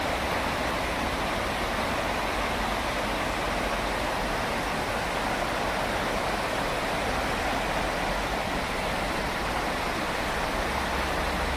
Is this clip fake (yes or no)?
no